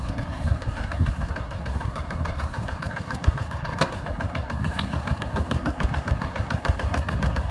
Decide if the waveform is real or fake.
fake